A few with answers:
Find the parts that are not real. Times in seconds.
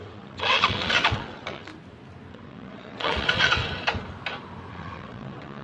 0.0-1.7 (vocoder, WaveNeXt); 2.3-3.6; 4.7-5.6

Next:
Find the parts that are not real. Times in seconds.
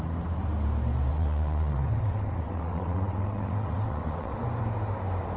1.1-4.3 (vocoder, WaveNeXt)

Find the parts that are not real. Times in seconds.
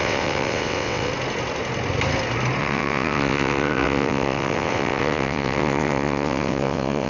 0.0-1.1 (vocoder, WaveNeXt); 2.6-7.1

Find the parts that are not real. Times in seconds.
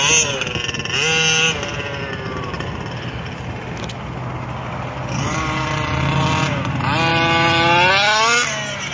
none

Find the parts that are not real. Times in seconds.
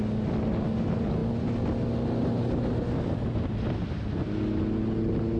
none